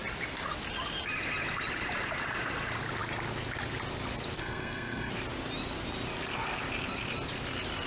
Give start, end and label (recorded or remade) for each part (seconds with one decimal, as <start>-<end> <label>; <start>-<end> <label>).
0.0-4.4 recorded; 4.4-5.1 remade; 5.1-7.9 recorded